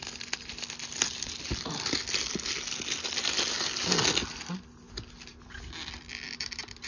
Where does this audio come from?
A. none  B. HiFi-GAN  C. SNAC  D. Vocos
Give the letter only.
A